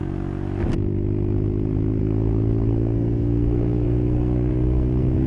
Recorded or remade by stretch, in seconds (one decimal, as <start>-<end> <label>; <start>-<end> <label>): 0.0-2.0 recorded; 2.0-5.3 remade